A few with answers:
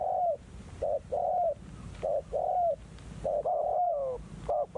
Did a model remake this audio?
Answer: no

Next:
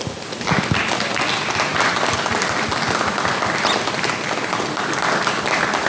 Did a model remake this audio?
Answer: no